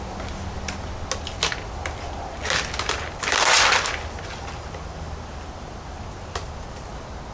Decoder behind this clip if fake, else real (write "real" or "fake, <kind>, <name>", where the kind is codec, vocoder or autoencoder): real